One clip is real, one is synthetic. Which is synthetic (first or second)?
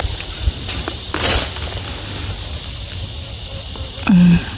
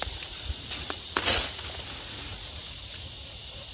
second